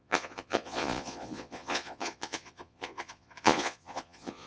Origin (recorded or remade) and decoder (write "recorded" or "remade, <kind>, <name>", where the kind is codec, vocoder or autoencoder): remade, vocoder, Vocos